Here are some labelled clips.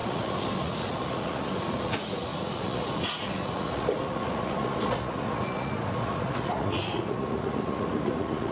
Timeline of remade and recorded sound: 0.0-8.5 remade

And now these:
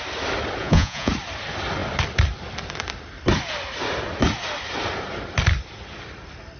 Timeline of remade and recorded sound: 0.0-0.6 recorded; 0.6-1.1 remade; 1.1-6.6 recorded

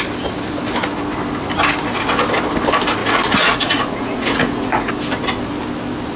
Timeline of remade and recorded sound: 0.0-3.0 recorded; 3.0-4.9 remade; 4.9-6.2 recorded

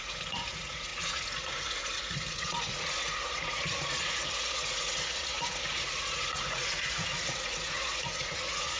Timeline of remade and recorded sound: 0.0-8.8 remade

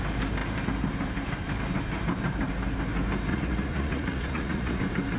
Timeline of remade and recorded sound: 0.0-3.3 recorded; 3.3-4.8 remade; 4.8-5.2 recorded

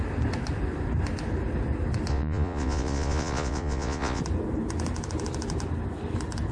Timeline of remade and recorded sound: 0.0-2.1 recorded; 2.1-4.2 remade; 4.2-6.5 recorded

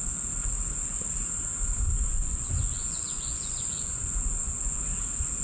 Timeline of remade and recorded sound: 0.0-2.1 recorded; 2.1-4.8 remade; 4.8-5.4 recorded